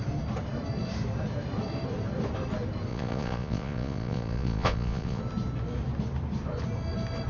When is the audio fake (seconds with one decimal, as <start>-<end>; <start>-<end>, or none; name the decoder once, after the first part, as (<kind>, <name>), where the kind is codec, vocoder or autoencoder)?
2.9-5.2 (vocoder, Vocos)